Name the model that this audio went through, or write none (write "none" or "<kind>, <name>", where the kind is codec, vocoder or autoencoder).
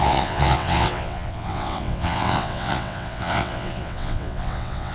vocoder, WaveNeXt